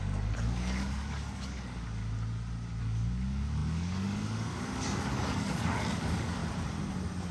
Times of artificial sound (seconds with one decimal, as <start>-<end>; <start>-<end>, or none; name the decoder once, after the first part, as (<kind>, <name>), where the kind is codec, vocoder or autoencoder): 0.0-2.0 (codec, DAC); 2.8-6.4